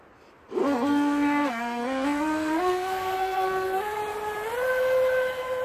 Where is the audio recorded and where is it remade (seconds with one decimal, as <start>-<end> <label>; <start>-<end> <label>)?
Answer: 0.0-0.6 recorded; 0.6-4.0 remade; 4.0-5.6 recorded